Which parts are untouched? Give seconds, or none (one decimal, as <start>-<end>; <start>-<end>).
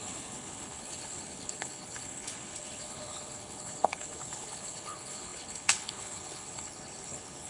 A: none